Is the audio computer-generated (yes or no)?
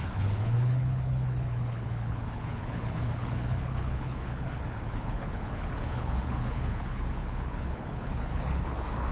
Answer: yes